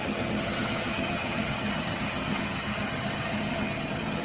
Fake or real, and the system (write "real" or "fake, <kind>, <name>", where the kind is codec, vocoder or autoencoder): fake, vocoder, HiFi-GAN